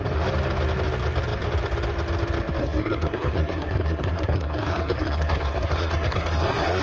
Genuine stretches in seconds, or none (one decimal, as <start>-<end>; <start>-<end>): 0.0-2.6